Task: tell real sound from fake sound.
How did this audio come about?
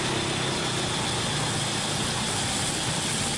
real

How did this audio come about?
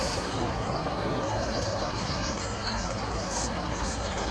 fake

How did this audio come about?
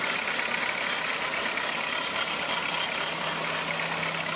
real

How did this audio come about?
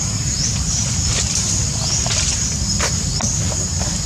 real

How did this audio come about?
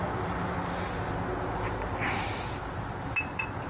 real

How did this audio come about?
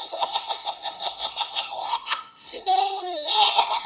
fake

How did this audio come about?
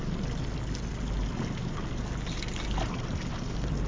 real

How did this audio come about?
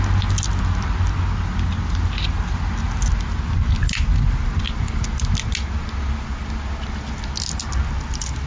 real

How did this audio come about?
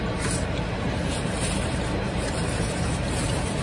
fake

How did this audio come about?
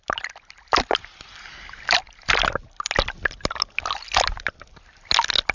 real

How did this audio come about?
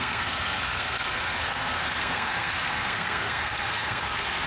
fake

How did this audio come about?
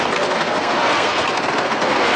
fake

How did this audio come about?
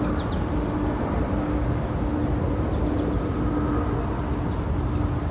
real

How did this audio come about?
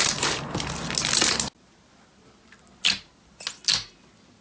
real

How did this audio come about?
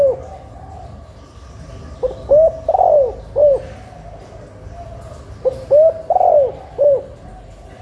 real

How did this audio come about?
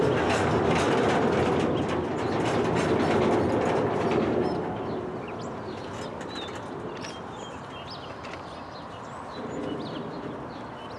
real